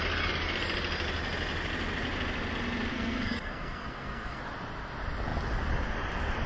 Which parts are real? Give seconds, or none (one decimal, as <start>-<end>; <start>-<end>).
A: 0.0-2.9; 4.4-6.5